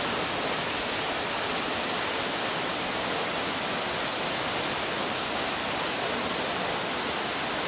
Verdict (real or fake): real